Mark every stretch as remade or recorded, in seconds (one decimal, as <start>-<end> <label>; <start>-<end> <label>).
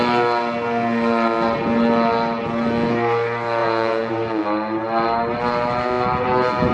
0.0-3.6 recorded; 3.6-4.1 remade; 4.1-6.7 recorded